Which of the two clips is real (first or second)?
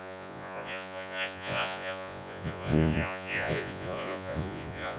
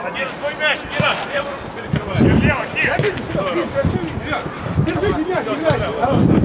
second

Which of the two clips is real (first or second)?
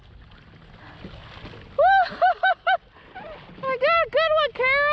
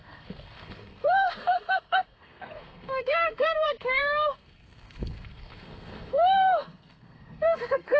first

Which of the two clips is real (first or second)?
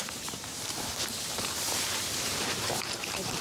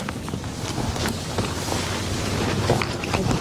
second